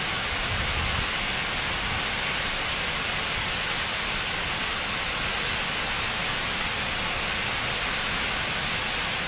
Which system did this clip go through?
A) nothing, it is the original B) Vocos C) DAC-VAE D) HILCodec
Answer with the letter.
A